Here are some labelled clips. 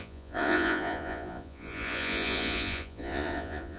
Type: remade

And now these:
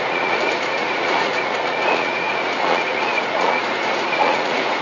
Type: remade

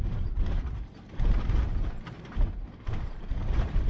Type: remade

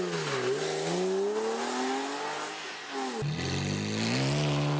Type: recorded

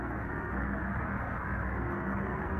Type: remade